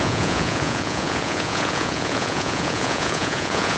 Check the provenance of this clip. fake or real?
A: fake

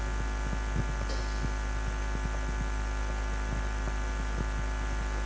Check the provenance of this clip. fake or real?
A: real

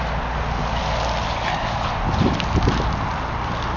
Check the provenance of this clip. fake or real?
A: real